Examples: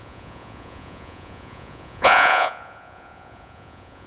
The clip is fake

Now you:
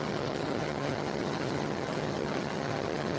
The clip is fake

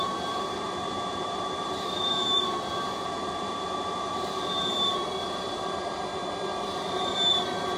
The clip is fake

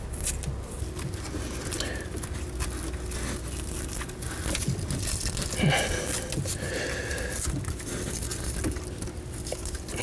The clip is real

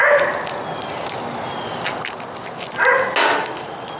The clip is real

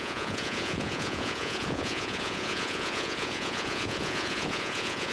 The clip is fake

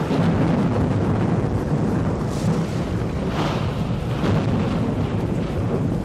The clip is real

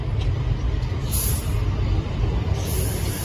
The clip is real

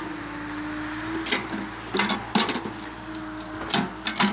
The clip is real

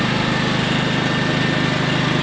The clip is real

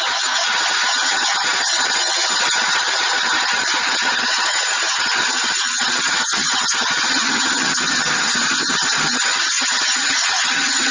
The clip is fake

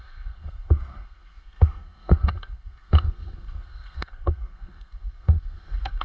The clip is fake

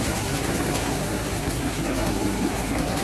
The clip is fake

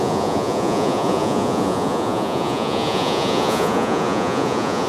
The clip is fake